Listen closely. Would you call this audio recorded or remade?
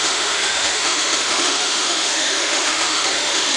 remade